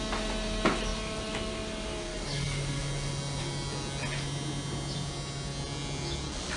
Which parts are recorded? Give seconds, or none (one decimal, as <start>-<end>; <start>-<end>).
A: 0.0-2.1; 2.8-6.6